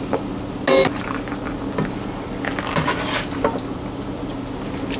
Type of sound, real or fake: real